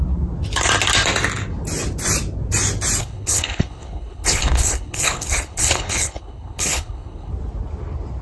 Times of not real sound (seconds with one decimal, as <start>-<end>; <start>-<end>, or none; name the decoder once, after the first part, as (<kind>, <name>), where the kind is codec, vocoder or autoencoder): 3.0-7.3 (codec, HILCodec)